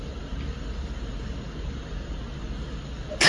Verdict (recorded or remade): recorded